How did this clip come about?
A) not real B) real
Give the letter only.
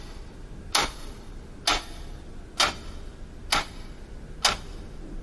B